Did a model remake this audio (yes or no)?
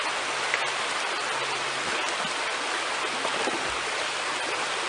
no